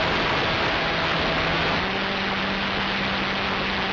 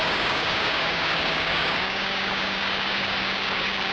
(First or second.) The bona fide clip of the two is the first